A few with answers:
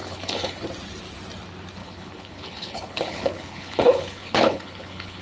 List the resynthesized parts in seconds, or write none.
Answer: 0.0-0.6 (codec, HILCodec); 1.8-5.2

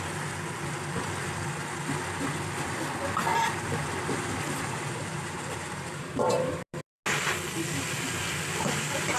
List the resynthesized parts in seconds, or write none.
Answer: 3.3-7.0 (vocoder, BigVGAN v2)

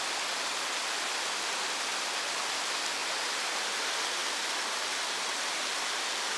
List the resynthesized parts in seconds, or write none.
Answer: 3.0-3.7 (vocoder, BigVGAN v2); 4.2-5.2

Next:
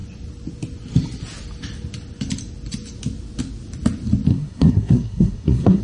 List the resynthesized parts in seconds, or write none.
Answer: 4.3-5.8 (codec, SNAC)